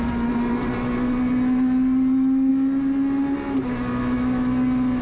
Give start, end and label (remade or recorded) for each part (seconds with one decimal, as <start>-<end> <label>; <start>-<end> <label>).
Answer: 0.0-5.0 recorded